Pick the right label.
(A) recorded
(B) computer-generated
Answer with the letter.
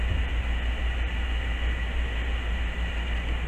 A